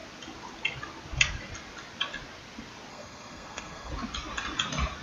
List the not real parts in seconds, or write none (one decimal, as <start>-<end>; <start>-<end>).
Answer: 2.9-3.9